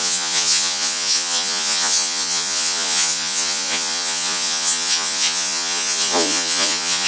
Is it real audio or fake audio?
fake